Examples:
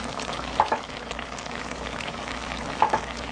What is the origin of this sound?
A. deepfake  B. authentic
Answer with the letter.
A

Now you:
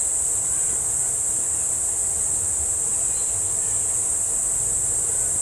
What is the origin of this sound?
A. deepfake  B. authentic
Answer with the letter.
B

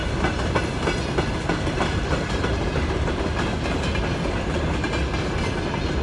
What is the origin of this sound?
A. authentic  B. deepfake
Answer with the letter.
A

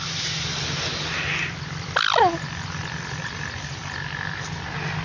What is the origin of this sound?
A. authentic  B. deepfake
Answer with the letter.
A